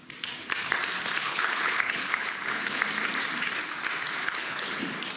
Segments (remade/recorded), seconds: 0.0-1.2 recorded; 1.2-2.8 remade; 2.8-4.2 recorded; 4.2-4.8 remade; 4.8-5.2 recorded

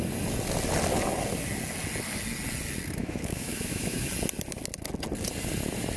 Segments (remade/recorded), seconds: 0.0-3.0 recorded; 3.0-4.1 remade; 4.1-6.0 recorded

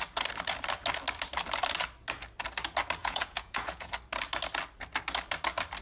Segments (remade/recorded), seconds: 0.0-3.0 recorded; 3.0-3.9 remade; 3.9-5.8 recorded

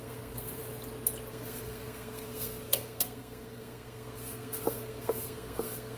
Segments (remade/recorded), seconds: 0.0-0.6 remade; 0.6-1.3 recorded; 1.3-6.0 remade

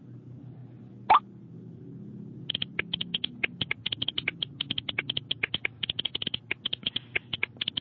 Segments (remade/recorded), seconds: 0.0-7.8 recorded

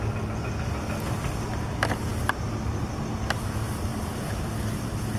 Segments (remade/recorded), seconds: 0.0-3.9 recorded; 3.9-4.8 remade; 4.8-5.2 recorded

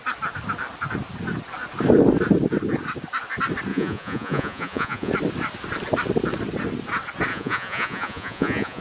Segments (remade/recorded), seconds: 0.0-3.7 recorded; 3.7-5.1 remade; 5.1-7.3 recorded; 7.3-8.8 remade

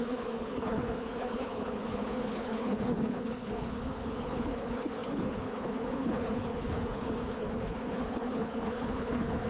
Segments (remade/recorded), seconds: 0.0-9.5 remade